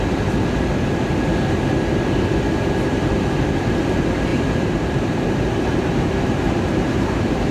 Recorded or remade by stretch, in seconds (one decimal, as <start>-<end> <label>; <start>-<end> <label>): 0.0-4.3 recorded; 4.3-7.5 remade